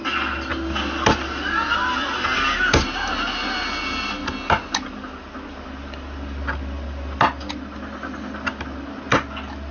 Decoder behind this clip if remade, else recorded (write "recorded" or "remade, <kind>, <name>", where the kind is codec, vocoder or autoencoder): recorded